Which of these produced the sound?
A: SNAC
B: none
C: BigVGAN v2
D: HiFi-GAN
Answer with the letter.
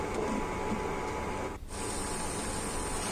B